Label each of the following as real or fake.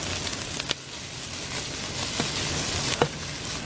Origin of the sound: real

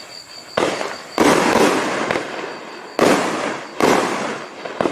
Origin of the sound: real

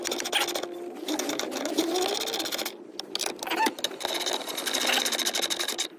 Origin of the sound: real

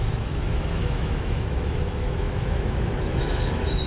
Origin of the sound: fake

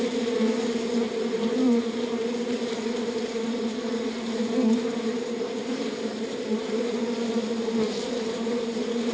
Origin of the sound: fake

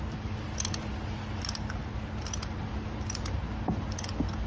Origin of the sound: real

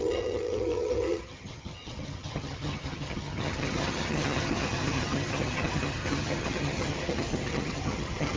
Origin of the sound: fake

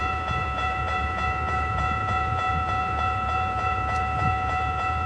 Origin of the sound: fake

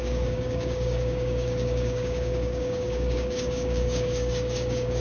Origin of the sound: fake